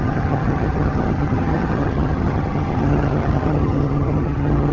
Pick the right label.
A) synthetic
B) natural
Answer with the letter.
A